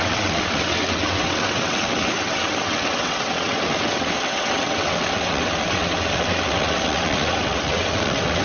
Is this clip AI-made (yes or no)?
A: yes